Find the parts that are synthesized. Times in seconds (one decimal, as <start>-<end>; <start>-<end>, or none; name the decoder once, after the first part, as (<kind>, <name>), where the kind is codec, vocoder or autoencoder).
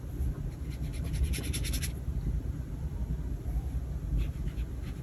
0.9-1.8 (vocoder, BigVGAN v2)